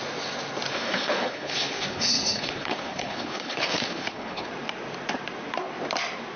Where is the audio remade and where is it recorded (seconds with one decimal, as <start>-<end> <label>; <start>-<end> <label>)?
0.0-0.7 recorded; 0.7-4.5 remade; 4.5-6.4 recorded